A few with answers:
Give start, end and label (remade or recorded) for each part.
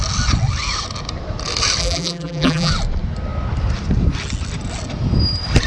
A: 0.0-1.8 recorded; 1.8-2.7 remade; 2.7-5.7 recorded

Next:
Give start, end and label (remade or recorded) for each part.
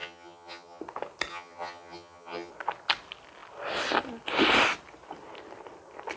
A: 0.0-0.8 remade; 0.8-1.3 recorded; 1.3-2.5 remade; 2.5-6.2 recorded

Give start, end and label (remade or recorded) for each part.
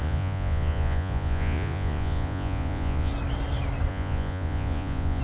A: 0.0-3.1 remade; 3.1-3.9 recorded; 3.9-5.2 remade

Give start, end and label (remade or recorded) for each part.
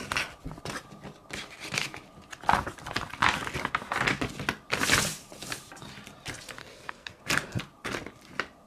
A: 0.0-6.6 recorded; 6.6-7.2 remade; 7.2-8.7 recorded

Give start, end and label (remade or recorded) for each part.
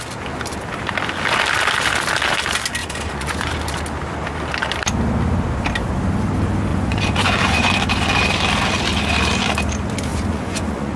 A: 0.0-2.8 recorded; 2.8-3.5 remade; 3.5-6.7 recorded; 6.7-7.7 remade; 7.7-10.1 recorded; 10.1-11.0 remade